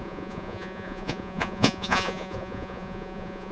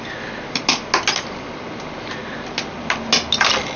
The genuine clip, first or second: second